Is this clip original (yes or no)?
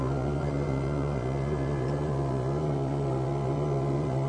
no